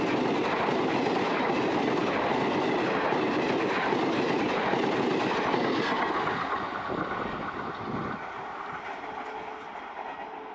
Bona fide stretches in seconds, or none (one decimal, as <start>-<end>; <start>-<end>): 0.0-10.5